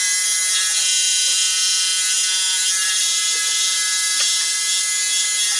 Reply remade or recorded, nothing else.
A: recorded